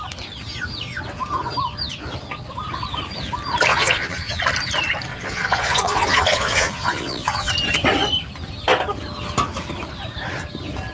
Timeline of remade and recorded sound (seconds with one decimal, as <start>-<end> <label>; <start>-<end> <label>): 0.0-3.7 recorded; 3.7-4.4 remade; 4.4-5.1 recorded; 5.1-7.5 remade; 7.5-10.9 recorded